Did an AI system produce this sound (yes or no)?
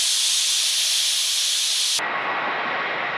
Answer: no